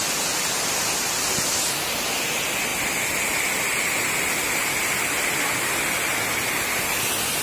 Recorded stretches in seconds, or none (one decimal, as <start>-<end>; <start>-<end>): 0.0-7.4